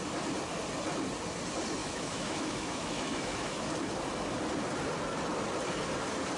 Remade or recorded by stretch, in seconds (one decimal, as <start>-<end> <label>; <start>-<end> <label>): 0.0-1.8 recorded; 1.8-3.7 remade; 3.7-6.4 recorded